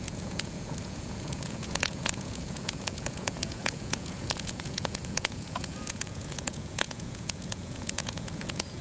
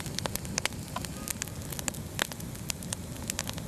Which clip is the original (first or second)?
second